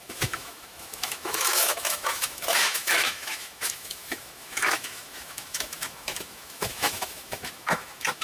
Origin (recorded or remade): remade